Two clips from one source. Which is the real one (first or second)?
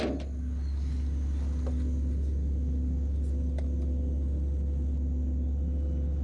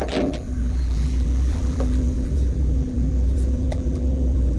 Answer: first